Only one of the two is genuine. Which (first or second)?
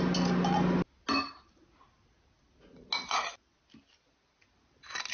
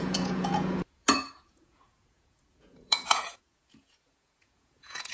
first